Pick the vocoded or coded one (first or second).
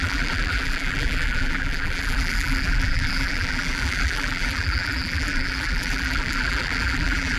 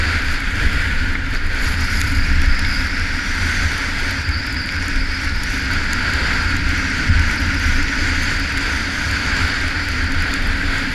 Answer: first